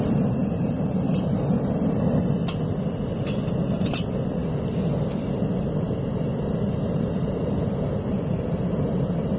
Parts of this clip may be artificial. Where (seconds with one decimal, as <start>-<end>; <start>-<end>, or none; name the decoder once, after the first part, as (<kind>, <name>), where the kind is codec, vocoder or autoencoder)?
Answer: none